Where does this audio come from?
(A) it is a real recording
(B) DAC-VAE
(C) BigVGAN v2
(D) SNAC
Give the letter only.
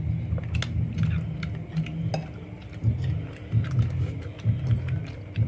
A